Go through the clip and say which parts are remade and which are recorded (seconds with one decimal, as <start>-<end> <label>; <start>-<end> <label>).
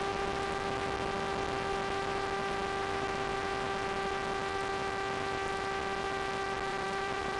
0.0-6.7 recorded; 6.7-7.4 remade